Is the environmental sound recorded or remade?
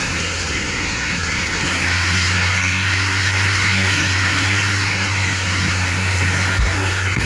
remade